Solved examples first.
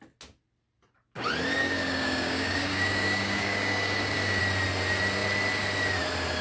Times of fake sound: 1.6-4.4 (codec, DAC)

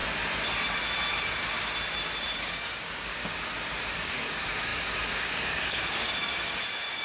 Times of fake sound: 2.3-3.2 (codec, DAC); 3.8-7.0

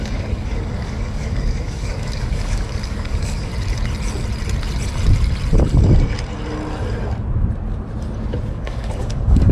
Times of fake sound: 0.0-3.5 (codec, DAC); 8.5-9.5

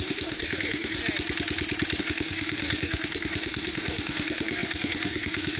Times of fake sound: 0.0-1.0 (codec, DAC); 2.0-5.6

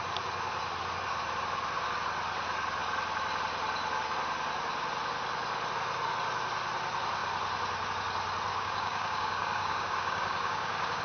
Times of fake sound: 8.5-11.0 (codec, DAC)

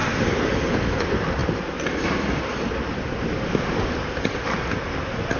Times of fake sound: none

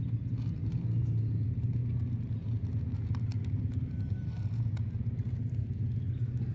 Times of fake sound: none